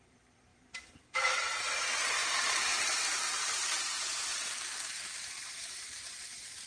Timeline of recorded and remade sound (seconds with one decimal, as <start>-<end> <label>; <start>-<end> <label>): 0.0-0.5 recorded; 0.5-1.7 remade; 1.7-2.2 recorded; 2.2-4.5 remade; 4.5-5.4 recorded; 5.4-6.2 remade; 6.2-6.7 recorded